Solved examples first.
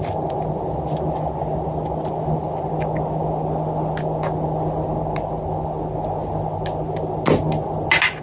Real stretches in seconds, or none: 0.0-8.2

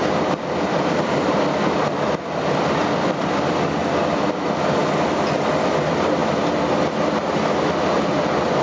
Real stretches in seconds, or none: 1.4-8.6

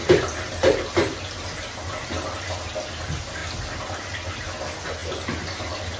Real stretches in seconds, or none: 0.0-6.0

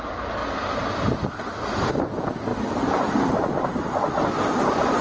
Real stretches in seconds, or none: 0.0-2.5; 3.9-5.0

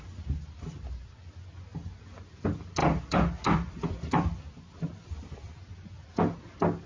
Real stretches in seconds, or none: 0.0-1.7; 2.2-2.8; 4.6-6.9

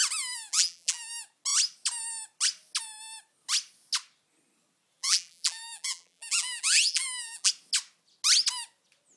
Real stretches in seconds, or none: 0.0-0.5; 1.1-5.0; 7.5-9.2

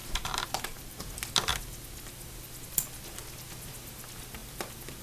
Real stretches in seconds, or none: 1.0-5.0

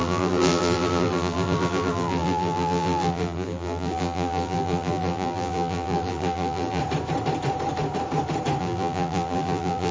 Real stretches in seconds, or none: 6.8-8.6